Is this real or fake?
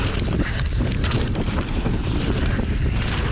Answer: fake